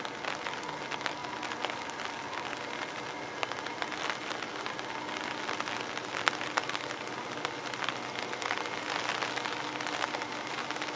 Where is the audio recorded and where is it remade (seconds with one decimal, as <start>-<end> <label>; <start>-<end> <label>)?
0.0-11.0 recorded